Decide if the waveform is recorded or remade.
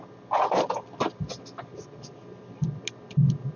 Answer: recorded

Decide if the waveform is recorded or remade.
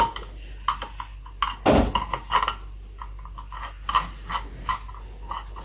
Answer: recorded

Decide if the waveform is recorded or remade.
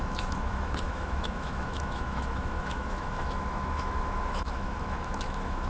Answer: remade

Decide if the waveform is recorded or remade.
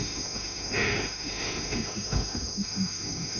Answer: remade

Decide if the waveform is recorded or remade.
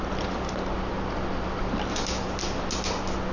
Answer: recorded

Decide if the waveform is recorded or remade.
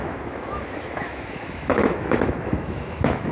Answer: remade